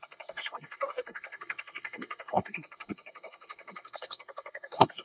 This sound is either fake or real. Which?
fake